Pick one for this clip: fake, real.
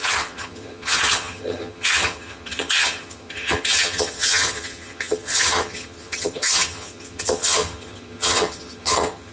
fake